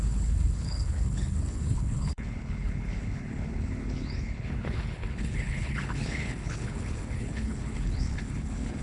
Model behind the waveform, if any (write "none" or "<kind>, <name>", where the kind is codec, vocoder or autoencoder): codec, HILCodec